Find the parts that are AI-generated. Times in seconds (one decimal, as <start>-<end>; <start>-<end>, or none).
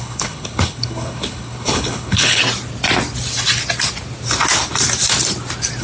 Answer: 0.0-2.4